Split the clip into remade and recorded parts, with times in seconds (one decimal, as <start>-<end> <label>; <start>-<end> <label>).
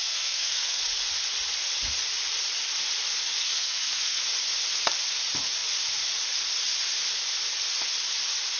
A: 0.0-0.8 remade; 0.8-3.4 recorded; 3.4-4.2 remade; 4.2-8.6 recorded